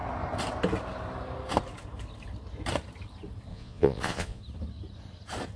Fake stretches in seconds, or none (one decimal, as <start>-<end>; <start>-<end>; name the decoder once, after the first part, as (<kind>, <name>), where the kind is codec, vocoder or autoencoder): 3.5-4.4 (vocoder, Vocos)